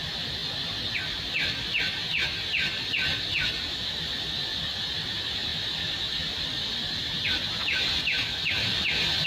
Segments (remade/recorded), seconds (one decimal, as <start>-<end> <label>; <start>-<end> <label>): 0.0-9.3 recorded